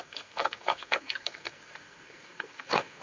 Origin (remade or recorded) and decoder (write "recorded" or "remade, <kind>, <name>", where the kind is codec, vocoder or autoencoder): remade, codec, SNAC